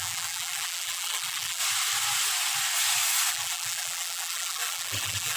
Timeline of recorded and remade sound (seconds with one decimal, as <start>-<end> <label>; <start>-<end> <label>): 0.0-1.6 remade; 1.6-3.3 recorded; 3.3-5.4 remade